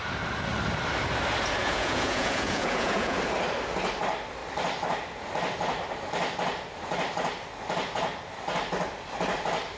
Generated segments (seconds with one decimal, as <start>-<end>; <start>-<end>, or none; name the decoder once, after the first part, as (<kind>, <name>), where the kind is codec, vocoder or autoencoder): 1.6-3.2 (vocoder, Vocos)